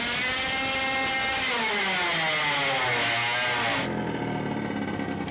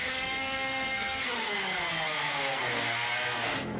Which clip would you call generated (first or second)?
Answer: second